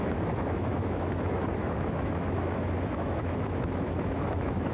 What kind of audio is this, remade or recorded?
remade